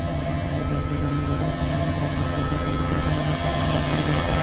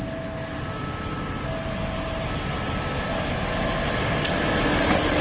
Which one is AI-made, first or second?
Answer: first